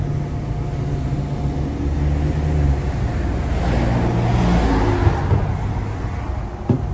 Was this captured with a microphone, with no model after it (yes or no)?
yes